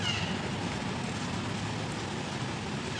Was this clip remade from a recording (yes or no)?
no